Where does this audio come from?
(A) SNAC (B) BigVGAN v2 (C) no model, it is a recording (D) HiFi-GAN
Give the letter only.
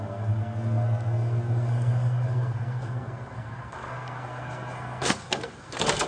A